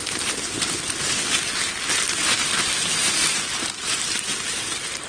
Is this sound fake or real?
real